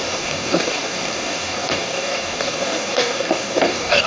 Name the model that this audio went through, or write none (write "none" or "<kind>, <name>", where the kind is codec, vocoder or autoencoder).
codec, DAC